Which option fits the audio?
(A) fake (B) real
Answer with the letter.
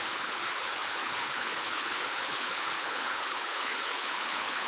A